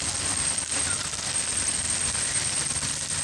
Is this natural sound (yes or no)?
yes